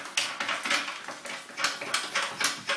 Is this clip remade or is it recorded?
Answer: recorded